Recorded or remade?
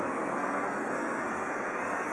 remade